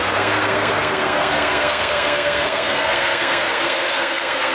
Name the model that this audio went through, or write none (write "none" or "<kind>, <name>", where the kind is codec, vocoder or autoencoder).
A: codec, SNAC